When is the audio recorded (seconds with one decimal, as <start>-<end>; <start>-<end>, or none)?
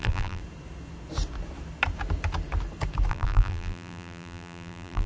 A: 0.4-3.1